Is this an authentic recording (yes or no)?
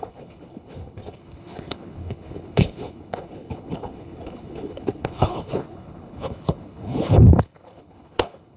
no